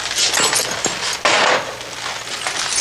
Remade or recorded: recorded